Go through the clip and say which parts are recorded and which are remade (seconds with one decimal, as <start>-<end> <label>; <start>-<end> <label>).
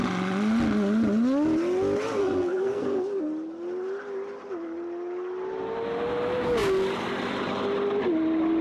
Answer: 0.0-2.2 recorded; 2.2-3.2 remade; 3.2-8.6 recorded